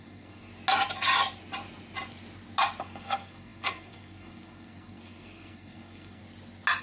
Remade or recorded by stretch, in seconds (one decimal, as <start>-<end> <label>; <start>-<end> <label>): 0.0-0.5 remade; 0.5-2.8 recorded; 2.8-6.2 remade; 6.2-6.8 recorded